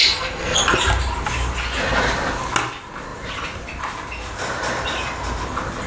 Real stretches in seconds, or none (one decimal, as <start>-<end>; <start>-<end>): 0.6-5.9

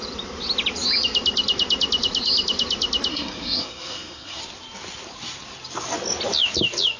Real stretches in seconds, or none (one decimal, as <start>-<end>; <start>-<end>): 0.0-3.1; 4.4-7.0